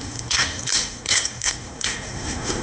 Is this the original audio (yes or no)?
no